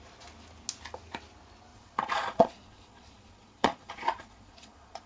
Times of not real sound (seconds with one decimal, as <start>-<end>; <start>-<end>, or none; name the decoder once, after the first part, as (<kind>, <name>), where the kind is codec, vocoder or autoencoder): 1.7-5.1 (vocoder, Vocos)